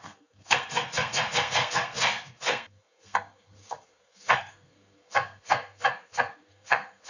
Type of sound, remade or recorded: remade